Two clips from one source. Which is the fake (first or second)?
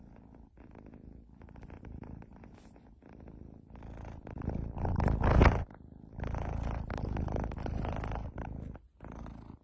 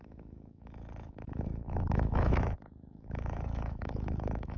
second